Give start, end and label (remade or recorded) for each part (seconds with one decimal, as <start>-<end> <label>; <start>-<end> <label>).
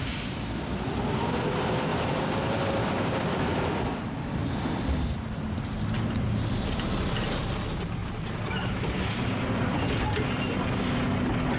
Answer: 0.0-1.9 recorded; 1.9-3.8 remade; 3.8-4.4 recorded; 4.4-7.3 remade; 7.3-8.0 recorded; 8.0-9.9 remade; 9.9-11.6 recorded